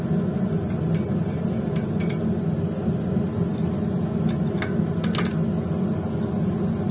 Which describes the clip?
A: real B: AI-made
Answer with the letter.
A